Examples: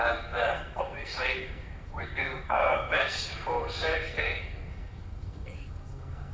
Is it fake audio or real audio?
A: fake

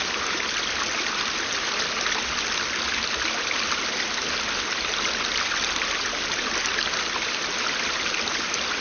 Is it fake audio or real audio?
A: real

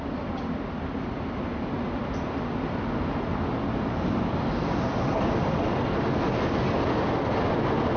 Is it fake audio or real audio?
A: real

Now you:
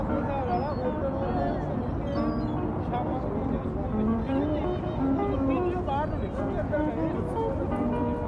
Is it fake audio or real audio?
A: real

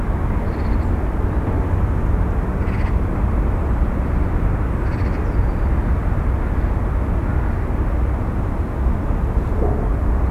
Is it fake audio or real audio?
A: real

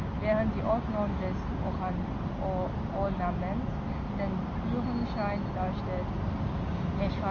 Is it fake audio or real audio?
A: real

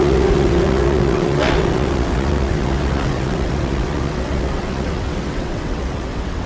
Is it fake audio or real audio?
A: fake